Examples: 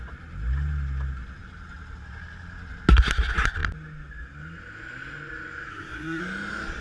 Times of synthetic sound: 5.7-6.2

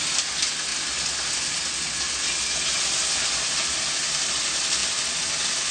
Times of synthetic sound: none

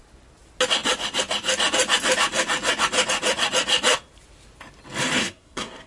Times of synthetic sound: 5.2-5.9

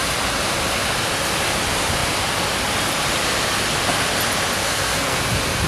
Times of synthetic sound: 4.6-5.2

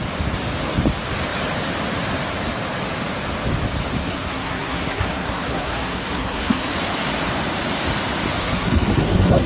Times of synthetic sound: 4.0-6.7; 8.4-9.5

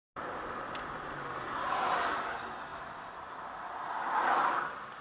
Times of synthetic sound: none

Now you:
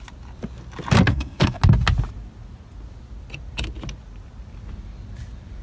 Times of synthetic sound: 1.1-1.6